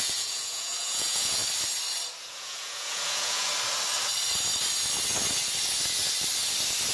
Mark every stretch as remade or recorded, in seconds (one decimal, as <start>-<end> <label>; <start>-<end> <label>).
0.0-1.4 remade; 1.4-2.2 recorded; 2.2-3.5 remade; 3.5-6.9 recorded